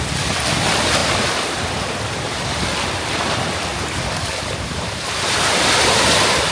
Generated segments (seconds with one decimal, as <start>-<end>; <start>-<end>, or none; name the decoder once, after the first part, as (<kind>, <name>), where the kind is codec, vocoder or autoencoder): 3.7-5.7 (vocoder, BigVGAN v2)